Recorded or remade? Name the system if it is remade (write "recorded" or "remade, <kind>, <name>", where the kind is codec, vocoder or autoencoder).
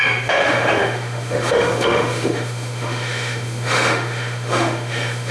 remade, autoencoder, DAC-VAE